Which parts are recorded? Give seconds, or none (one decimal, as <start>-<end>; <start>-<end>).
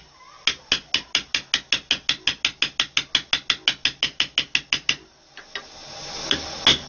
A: 0.0-6.9